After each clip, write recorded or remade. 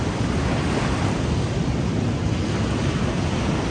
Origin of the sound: recorded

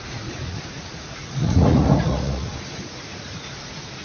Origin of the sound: remade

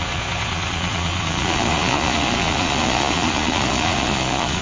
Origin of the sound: remade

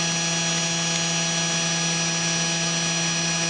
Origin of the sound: recorded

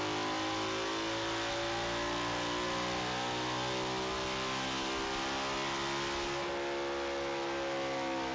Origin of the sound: recorded